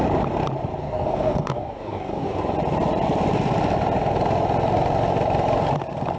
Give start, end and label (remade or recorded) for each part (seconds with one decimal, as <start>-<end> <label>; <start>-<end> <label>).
0.0-0.8 recorded; 0.8-2.4 remade; 2.4-6.2 recorded